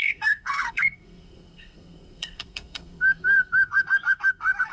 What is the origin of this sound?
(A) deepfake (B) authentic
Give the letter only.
A